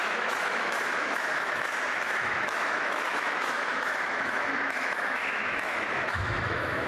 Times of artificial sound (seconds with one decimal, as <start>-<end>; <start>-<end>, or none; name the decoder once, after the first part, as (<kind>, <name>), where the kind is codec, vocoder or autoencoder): 0.0-6.9 (autoencoder, DAC-VAE)